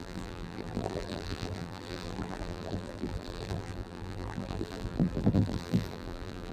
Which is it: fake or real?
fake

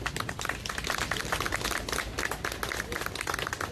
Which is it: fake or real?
real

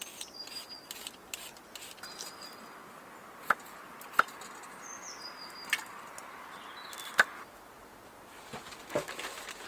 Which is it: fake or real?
real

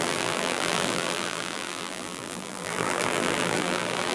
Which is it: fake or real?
fake